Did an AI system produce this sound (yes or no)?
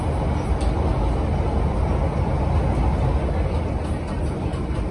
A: no